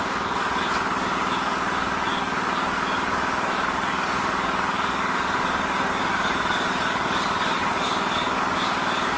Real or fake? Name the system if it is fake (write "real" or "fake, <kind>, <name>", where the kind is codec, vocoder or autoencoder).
fake, codec, DAC